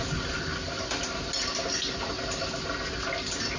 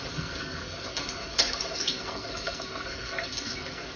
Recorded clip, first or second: first